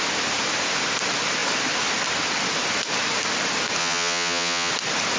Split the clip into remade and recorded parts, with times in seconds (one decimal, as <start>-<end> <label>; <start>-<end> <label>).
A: 0.0-3.8 recorded; 3.8-4.7 remade; 4.7-5.2 recorded